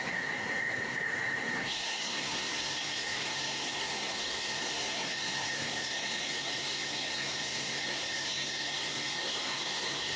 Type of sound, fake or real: fake